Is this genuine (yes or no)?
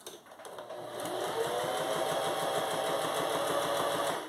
yes